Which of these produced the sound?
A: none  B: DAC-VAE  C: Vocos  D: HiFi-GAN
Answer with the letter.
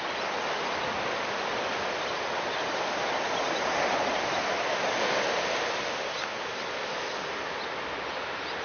A